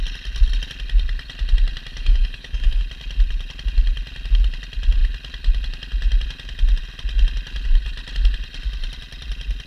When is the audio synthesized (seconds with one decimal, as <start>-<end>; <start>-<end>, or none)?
1.9-2.8

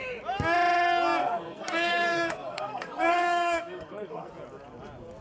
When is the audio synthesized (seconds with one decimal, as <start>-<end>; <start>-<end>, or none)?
1.2-4.3

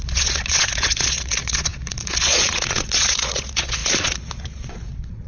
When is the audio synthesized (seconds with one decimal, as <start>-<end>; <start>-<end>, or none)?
0.0-5.3

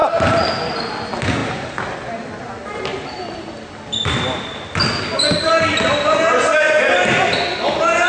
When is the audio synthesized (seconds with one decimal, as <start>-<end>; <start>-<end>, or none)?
0.0-0.5

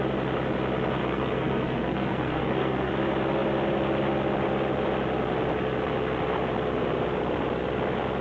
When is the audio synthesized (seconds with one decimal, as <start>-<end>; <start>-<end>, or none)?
1.0-2.9

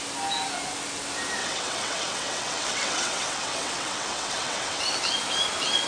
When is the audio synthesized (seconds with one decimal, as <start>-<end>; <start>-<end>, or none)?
1.4-4.8